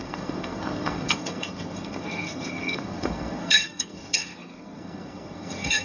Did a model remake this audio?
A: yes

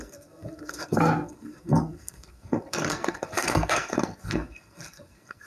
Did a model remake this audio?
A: yes